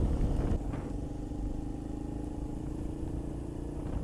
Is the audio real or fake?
real